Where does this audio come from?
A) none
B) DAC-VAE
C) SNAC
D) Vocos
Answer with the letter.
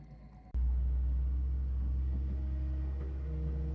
A